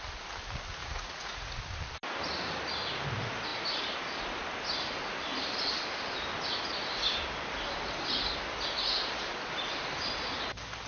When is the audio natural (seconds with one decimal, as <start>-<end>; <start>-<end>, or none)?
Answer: 0.0-0.8; 1.6-10.9